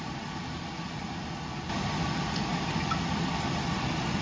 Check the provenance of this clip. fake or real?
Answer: fake